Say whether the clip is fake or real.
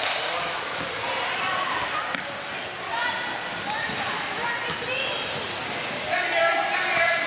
real